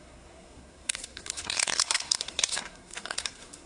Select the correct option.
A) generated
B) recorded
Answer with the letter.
A